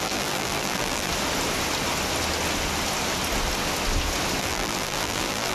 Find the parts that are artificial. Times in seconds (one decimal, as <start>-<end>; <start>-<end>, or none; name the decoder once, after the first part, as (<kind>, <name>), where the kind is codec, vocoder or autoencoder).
0.0-1.1 (vocoder, BigVGAN v2); 4.4-5.5